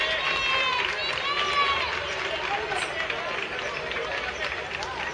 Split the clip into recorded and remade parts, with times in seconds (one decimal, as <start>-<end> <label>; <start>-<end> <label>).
0.0-5.1 recorded